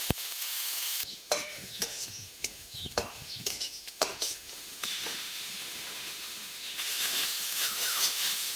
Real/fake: fake